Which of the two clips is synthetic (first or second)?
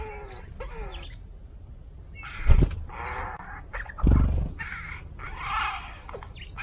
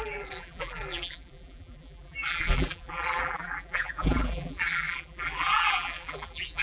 second